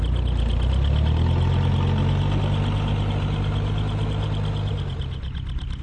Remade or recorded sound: recorded